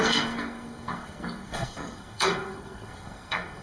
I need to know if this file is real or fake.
fake